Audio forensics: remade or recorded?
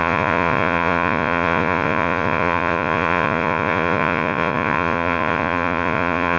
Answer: remade